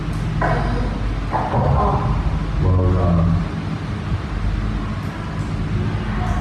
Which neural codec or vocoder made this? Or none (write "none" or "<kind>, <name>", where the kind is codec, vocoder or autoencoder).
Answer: none